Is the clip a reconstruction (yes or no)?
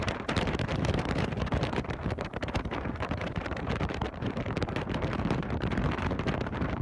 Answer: yes